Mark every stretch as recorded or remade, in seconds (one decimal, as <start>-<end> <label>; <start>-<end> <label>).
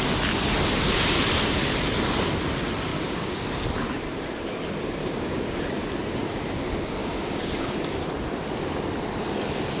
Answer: 0.0-2.9 recorded; 2.9-3.5 remade; 3.5-5.0 recorded; 5.0-5.6 remade; 5.6-7.0 recorded; 7.0-7.6 remade; 7.6-9.8 recorded